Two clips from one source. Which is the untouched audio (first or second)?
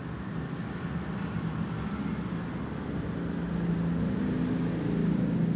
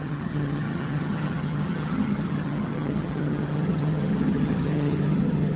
first